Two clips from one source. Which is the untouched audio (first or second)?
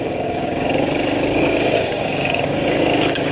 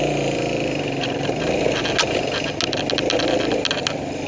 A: second